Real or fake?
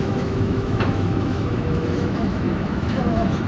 fake